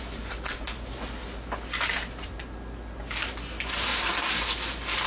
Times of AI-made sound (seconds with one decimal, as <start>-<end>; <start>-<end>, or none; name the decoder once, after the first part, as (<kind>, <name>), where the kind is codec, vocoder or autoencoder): none